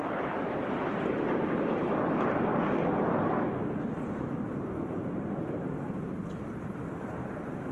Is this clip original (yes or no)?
no